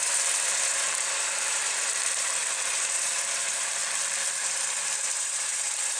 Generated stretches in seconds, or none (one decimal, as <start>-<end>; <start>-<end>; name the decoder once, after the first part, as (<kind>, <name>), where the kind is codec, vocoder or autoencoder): 0.0-3.8 (vocoder, BigVGAN v2); 4.3-6.0